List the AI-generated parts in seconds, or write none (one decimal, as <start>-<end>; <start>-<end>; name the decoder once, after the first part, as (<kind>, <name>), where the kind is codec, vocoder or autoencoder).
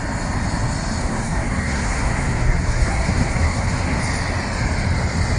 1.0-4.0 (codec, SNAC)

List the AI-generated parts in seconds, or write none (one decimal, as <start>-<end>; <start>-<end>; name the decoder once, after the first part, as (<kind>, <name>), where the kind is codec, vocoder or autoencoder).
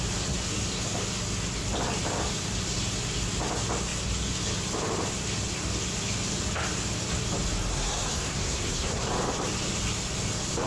7.7-9.1 (codec, SNAC)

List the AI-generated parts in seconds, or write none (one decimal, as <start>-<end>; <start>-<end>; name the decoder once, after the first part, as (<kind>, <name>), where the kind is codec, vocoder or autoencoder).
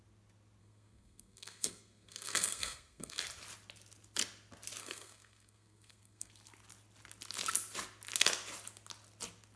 0.6-3.2 (codec, SNAC); 4.8-6.3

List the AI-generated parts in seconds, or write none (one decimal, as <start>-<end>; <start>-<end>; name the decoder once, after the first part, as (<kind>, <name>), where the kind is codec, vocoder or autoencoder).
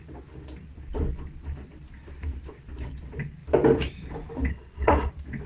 4.5-5.1 (codec, SNAC)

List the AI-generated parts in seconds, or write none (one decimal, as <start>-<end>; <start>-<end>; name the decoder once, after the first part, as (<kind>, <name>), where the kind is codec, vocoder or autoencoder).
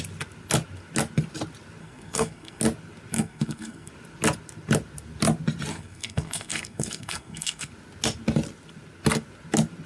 1.8-2.6 (codec, SNAC); 3.1-3.9; 5.7-7.7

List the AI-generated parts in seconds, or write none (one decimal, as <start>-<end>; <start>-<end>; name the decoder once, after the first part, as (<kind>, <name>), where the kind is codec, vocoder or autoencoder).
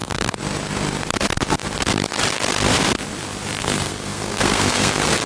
0.0-0.4 (codec, SNAC); 3.6-5.3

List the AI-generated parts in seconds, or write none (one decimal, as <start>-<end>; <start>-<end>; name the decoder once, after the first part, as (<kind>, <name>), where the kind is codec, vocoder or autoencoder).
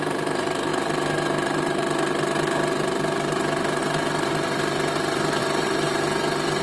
none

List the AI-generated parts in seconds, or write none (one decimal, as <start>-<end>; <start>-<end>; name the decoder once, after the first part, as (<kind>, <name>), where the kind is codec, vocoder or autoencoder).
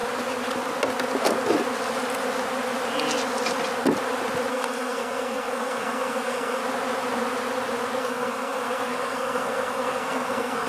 4.5-6.6 (codec, SNAC); 8.0-10.7